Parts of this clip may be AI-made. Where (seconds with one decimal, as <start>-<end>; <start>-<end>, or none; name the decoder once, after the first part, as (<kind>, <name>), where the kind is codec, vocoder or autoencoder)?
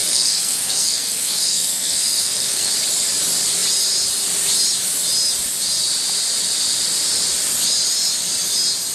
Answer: 0.0-2.7 (codec, SNAC)